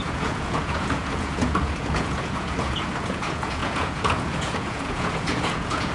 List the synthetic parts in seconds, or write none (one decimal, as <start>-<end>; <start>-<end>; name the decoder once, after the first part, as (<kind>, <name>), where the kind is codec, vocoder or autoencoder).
0.0-5.9 (vocoder, Vocos)